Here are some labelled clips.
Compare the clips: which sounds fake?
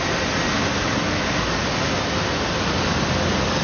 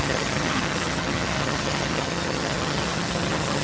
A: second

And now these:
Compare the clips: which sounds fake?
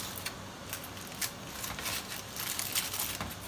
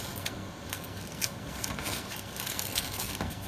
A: second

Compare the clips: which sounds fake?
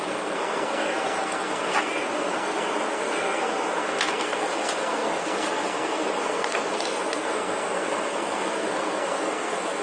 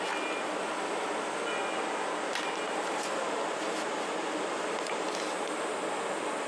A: first